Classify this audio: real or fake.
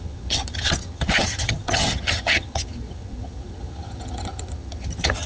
fake